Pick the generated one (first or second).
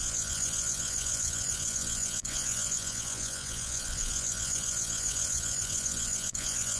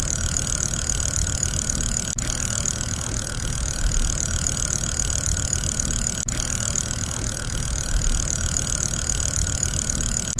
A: first